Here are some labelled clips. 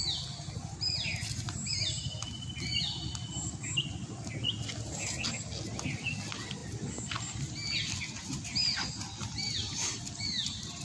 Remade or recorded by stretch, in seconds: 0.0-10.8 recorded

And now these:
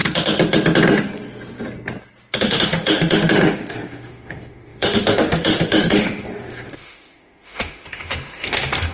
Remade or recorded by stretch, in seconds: 0.0-2.4 recorded; 2.4-8.9 remade

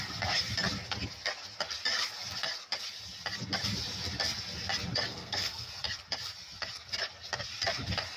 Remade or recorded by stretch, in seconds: 0.0-5.1 recorded; 5.1-5.7 remade; 5.7-8.2 recorded

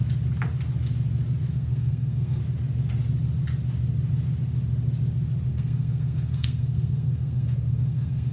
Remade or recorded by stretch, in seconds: 0.0-1.5 recorded; 1.5-2.4 remade; 2.4-5.5 recorded; 5.5-8.3 remade

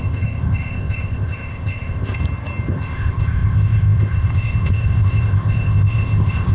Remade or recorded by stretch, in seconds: 0.0-2.2 remade; 2.2-2.7 recorded; 2.7-6.5 remade

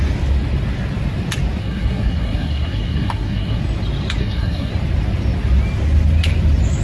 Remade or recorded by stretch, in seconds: 0.0-1.6 recorded; 1.6-3.6 remade; 3.6-4.2 recorded; 4.2-4.7 remade; 4.7-6.8 recorded

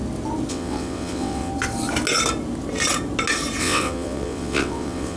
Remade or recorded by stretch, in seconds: 0.0-0.5 recorded; 0.5-1.5 remade; 1.5-3.6 recorded; 3.6-5.2 remade

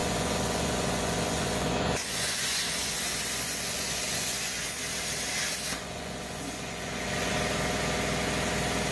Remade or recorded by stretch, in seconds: 0.0-4.8 remade; 4.8-5.7 recorded; 5.7-7.3 remade; 7.3-8.9 recorded